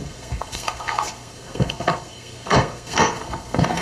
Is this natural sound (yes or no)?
no